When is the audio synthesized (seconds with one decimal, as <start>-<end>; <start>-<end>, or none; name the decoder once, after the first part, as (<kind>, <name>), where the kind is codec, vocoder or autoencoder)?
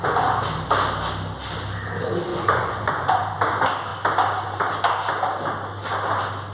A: 2.3-3.1 (vocoder, Vocos)